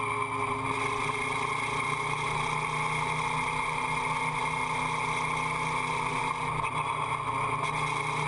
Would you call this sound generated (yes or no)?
no